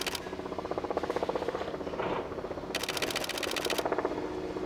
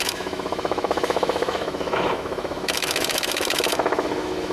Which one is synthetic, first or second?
second